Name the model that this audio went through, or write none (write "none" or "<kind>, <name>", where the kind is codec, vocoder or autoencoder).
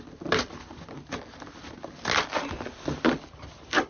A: none